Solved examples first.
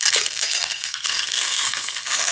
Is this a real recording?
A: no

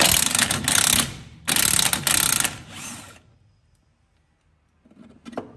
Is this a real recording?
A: yes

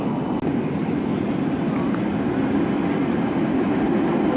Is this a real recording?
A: yes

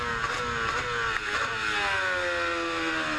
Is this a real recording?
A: yes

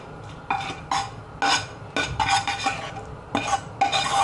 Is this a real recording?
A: yes